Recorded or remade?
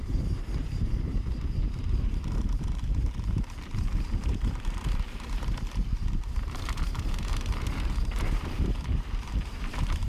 remade